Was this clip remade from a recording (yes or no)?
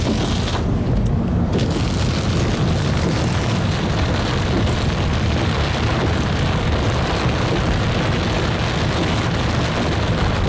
no